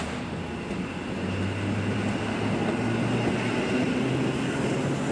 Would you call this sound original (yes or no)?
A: yes